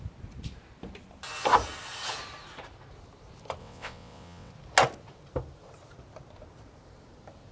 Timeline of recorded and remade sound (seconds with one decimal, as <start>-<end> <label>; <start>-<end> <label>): 0.0-3.6 recorded; 3.6-4.5 remade; 4.5-7.5 recorded